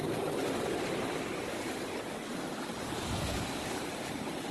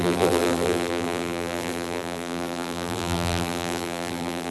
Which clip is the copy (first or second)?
second